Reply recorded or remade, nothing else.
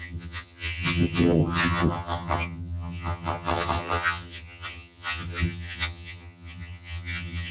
remade